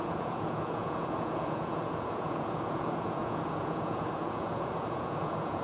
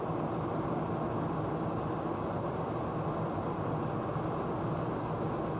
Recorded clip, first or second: second